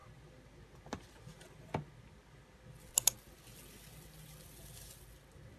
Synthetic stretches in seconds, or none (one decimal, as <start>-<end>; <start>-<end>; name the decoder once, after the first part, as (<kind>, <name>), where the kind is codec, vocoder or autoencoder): none